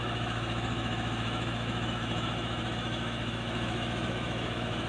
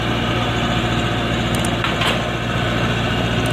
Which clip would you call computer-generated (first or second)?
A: first